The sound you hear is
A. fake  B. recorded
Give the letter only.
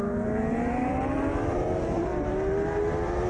A